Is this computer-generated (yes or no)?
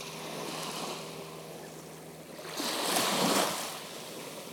no